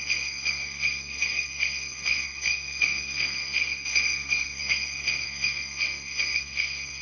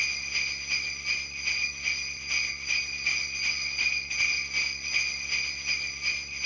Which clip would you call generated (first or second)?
first